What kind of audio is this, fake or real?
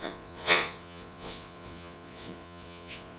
fake